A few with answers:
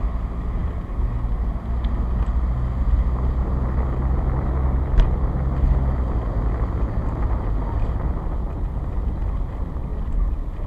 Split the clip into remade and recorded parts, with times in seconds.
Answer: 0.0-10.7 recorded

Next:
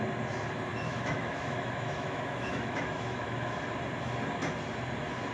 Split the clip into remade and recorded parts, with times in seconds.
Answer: 0.0-0.7 recorded; 0.7-3.6 remade; 3.6-5.3 recorded

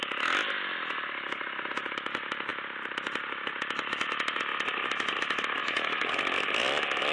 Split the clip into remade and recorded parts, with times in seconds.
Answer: 0.0-5.6 recorded; 5.6-6.1 remade; 6.1-7.1 recorded

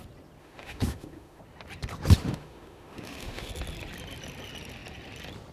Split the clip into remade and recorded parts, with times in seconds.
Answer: 0.0-0.4 recorded; 0.4-1.4 remade; 1.4-2.2 recorded; 2.2-3.5 remade; 3.5-5.5 recorded

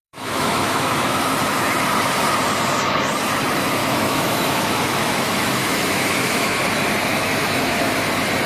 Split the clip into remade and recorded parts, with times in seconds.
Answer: 0.0-1.2 remade; 1.2-3.8 recorded; 3.8-6.6 remade; 6.6-7.1 recorded; 7.1-7.9 remade; 7.9-8.5 recorded

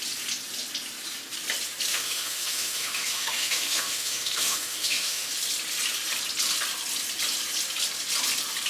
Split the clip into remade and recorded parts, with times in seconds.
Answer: 0.0-1.9 recorded; 1.9-5.3 remade; 5.3-8.7 recorded

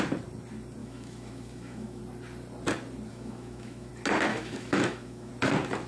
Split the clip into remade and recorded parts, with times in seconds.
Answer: 0.0-0.8 recorded; 0.8-2.0 remade; 2.0-3.1 recorded; 3.1-3.9 remade; 3.9-4.3 recorded; 4.3-5.3 remade; 5.3-5.9 recorded

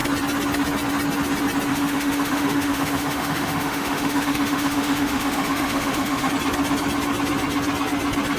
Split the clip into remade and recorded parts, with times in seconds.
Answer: 0.0-1.7 recorded; 1.7-6.3 remade; 6.3-8.4 recorded